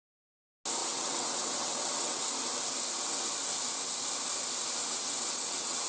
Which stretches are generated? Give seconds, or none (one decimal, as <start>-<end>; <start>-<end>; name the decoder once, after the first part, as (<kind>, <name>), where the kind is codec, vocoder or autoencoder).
0.8-2.3 (vocoder, WaveNeXt); 4.8-5.9